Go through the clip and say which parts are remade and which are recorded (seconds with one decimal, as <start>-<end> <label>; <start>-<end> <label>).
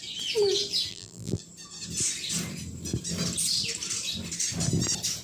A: 0.0-0.9 recorded; 0.9-1.4 remade; 1.4-5.2 recorded